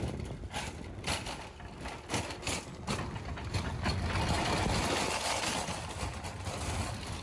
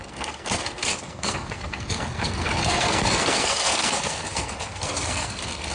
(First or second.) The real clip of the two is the first